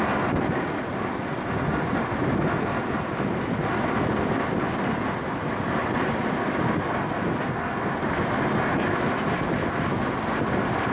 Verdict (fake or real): real